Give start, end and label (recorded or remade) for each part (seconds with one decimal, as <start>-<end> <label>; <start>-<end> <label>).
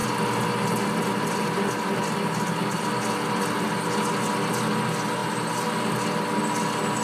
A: 0.0-5.2 recorded; 5.2-5.9 remade; 5.9-7.0 recorded